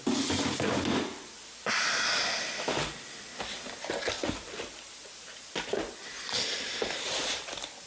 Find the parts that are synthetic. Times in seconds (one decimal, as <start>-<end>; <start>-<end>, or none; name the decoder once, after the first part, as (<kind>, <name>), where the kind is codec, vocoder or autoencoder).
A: 3.3-4.3 (vocoder, BigVGAN v2); 5.0-7.2